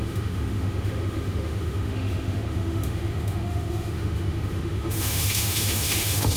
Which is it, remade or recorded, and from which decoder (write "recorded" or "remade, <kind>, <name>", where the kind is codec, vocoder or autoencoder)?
remade, autoencoder, DAC-VAE